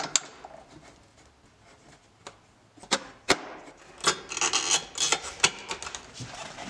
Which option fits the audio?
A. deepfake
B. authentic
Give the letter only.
B